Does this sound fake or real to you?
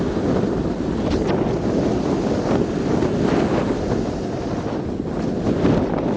real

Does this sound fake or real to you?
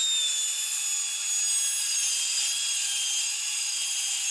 real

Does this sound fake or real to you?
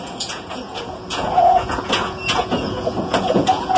fake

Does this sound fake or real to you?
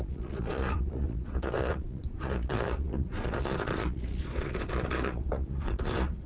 fake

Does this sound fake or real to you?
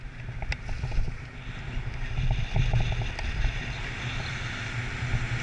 real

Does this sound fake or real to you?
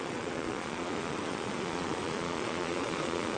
fake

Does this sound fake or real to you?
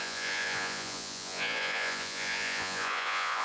fake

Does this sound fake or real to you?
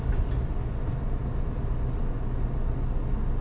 real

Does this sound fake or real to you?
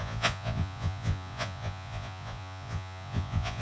fake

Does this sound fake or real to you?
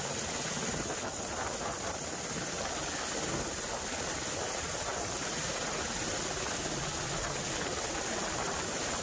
real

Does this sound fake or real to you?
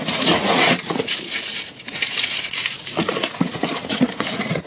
fake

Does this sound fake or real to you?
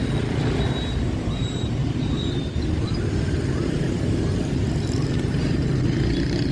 real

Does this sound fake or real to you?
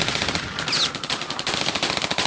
real